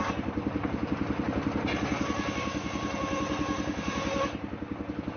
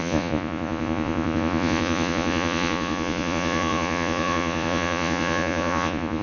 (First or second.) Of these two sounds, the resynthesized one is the second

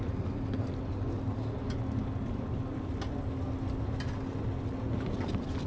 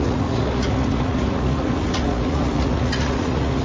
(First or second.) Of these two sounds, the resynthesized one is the second